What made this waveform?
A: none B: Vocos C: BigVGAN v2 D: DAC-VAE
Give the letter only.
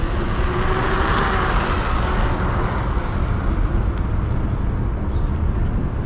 A